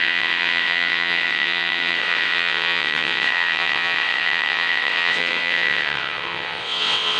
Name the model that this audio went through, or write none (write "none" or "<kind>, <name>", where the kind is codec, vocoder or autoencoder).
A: vocoder, WaveNeXt